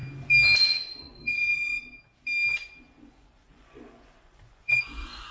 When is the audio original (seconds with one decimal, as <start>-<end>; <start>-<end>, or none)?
0.0-1.1; 1.9-2.5